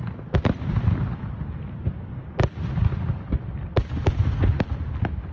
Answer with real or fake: real